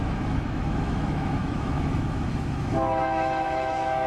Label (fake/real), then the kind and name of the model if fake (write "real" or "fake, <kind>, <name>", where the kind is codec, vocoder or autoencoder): fake, autoencoder, DAC-VAE